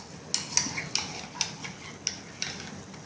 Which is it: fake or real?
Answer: real